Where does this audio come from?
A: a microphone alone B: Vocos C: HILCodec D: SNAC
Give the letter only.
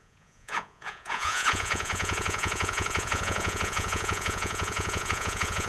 B